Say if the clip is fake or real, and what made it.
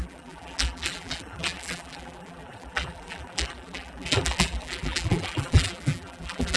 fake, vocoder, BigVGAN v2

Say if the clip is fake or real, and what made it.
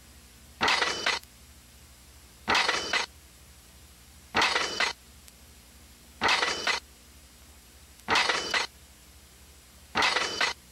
fake, vocoder, BigVGAN v2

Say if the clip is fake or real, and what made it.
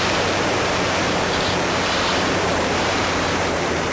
fake, vocoder, BigVGAN v2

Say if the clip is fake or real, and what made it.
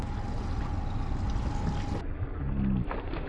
real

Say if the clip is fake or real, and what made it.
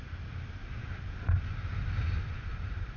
real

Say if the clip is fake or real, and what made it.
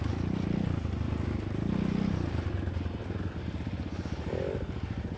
real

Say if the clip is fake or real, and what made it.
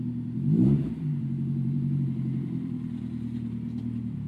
fake, vocoder, BigVGAN v2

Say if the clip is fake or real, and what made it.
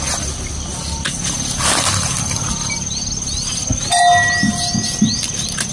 real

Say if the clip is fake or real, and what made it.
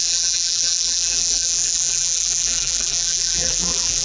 fake, vocoder, BigVGAN v2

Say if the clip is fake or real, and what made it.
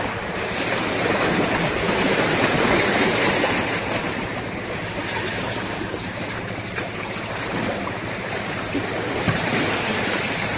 fake, vocoder, BigVGAN v2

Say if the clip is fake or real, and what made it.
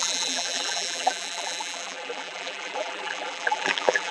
fake, vocoder, BigVGAN v2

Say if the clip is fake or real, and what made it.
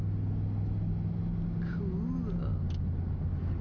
real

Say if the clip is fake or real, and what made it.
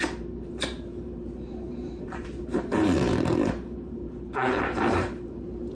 fake, vocoder, BigVGAN v2